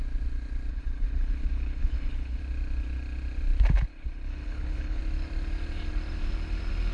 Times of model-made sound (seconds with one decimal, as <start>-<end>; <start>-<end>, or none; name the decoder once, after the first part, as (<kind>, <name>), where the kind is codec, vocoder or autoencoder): 0.7-2.4 (codec, HILCodec); 3.9-5.0